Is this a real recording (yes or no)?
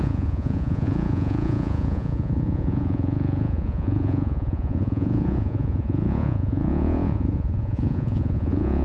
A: no